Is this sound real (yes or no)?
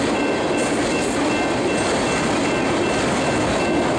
yes